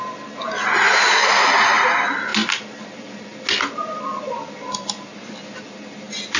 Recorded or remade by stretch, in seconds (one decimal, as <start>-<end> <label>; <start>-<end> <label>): 0.0-6.4 recorded